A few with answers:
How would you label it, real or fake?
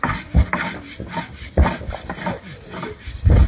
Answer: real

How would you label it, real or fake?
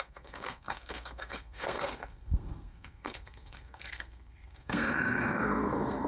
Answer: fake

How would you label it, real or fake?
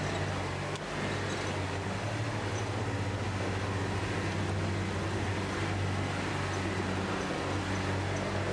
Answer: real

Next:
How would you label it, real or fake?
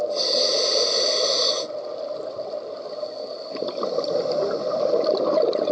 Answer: real